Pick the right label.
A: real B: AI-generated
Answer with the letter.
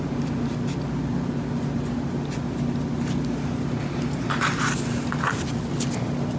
A